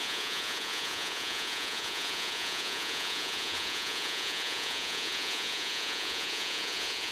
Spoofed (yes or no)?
yes